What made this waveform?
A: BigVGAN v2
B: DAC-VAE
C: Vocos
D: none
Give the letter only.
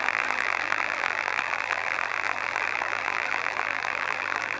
A